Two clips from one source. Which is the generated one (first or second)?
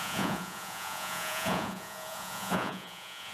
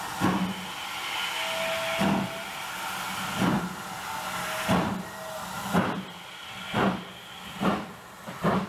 first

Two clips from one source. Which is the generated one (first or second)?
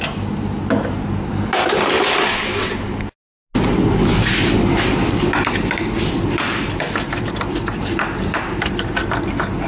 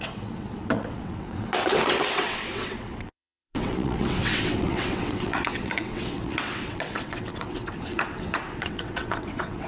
second